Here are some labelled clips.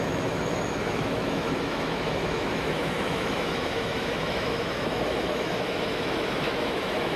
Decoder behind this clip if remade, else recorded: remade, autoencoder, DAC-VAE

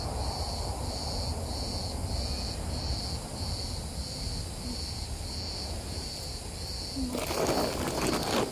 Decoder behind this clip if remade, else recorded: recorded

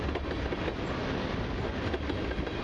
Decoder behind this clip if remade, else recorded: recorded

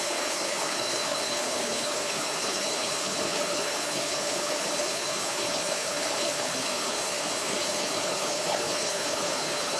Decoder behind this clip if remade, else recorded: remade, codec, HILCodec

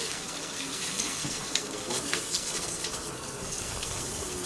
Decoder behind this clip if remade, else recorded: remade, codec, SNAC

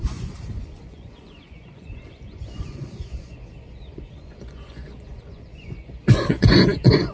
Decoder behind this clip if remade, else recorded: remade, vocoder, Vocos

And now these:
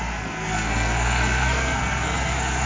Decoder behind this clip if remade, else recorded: remade, codec, SNAC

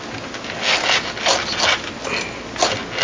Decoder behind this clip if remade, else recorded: recorded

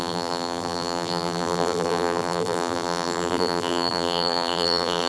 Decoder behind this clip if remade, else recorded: remade, vocoder, BigVGAN v2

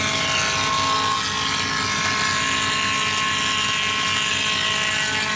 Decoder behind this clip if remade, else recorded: recorded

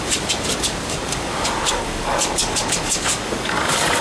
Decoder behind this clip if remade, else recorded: remade, codec, DAC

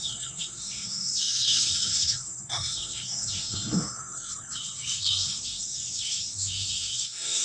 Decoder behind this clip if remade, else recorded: remade, codec, SNAC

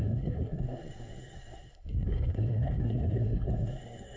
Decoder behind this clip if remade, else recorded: remade, codec, SNAC